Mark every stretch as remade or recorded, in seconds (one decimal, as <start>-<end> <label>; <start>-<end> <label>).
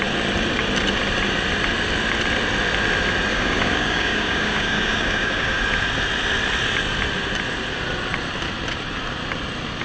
0.0-3.3 recorded; 3.3-5.6 remade; 5.6-9.8 recorded